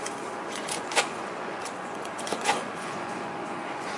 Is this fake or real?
fake